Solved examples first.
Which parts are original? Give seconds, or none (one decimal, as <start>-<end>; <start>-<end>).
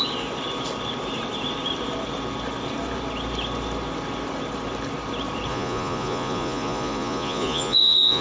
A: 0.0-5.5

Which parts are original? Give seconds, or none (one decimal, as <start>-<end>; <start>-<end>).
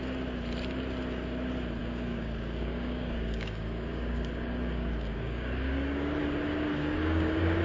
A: 0.0-1.8; 6.2-6.7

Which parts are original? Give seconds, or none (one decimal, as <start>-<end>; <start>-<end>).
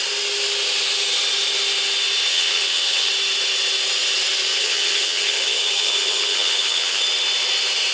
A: 0.0-2.3; 3.1-4.5; 7.0-7.9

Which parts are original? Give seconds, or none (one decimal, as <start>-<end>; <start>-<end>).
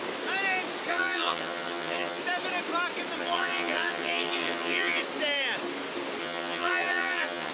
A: 0.0-0.9; 2.2-3.2; 5.0-6.2